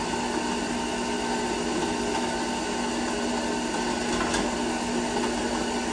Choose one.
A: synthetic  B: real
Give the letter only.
B